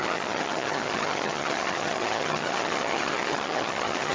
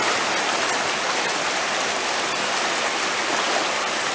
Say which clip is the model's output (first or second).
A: first